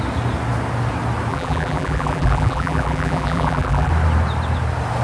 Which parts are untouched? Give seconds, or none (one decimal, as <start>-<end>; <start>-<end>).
0.0-1.3; 3.9-5.0